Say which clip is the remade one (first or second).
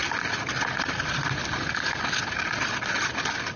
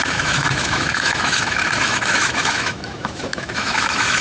second